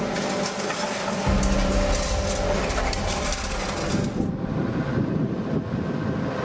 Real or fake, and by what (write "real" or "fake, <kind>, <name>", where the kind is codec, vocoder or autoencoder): real